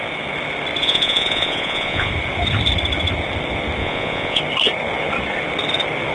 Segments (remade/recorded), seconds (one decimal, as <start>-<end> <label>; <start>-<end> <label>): 0.0-0.8 recorded; 0.8-2.1 remade; 2.1-3.8 recorded; 3.8-4.4 remade; 4.4-6.1 recorded